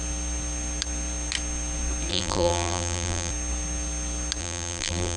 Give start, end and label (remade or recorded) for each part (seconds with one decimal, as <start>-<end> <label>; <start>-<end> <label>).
0.0-2.1 recorded; 2.1-3.3 remade; 3.3-4.4 recorded; 4.4-5.2 remade